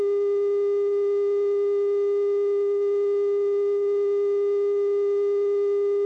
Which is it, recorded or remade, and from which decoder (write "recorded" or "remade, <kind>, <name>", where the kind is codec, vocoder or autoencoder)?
recorded